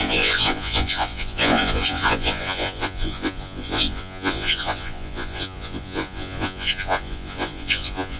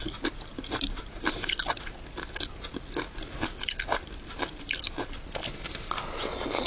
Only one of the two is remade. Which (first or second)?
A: first